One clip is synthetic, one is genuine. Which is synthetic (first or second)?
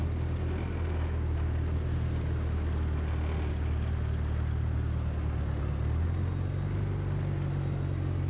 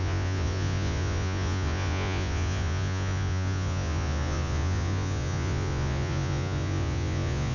second